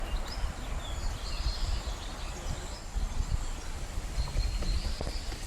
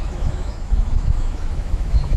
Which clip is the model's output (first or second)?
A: second